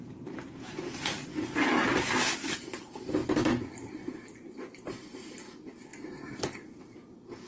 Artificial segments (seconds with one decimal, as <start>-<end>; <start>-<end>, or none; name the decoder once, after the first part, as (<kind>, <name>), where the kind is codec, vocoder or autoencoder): 0.0-1.3 (vocoder, BigVGAN v2); 2.3-3.2; 3.9-5.9; 6.8-7.5